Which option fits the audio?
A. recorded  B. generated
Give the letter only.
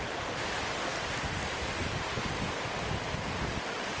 A